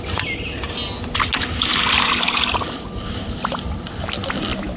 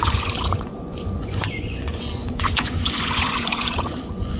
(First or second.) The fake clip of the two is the second